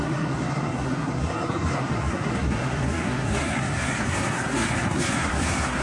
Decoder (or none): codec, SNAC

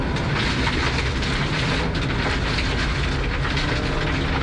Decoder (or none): none